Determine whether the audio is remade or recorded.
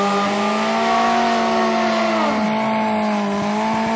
recorded